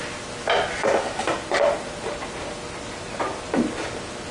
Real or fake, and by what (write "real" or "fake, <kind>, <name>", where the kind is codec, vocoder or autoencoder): real